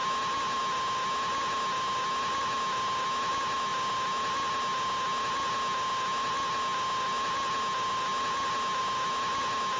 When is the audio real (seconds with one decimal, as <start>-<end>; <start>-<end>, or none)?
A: 0.0-9.8